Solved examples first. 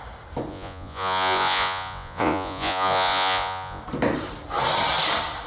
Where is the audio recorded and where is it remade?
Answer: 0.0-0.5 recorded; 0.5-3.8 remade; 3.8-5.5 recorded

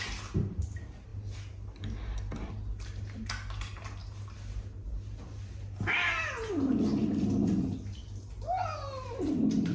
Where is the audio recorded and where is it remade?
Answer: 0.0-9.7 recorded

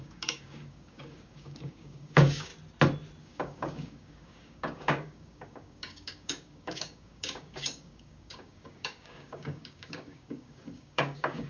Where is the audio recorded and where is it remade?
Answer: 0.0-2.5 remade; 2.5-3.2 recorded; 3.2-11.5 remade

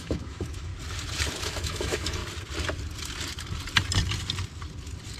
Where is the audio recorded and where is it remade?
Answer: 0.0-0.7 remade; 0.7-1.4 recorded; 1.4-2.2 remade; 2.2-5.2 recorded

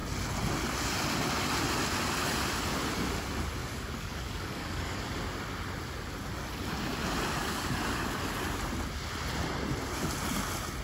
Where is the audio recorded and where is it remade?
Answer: 0.0-3.6 recorded; 3.6-5.0 remade; 5.0-7.4 recorded; 7.4-8.3 remade; 8.3-10.8 recorded

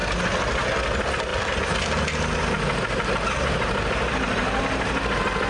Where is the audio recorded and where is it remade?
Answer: 0.0-5.5 recorded

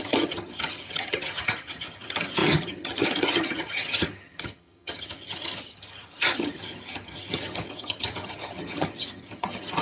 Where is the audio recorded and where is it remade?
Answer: 0.0-9.8 remade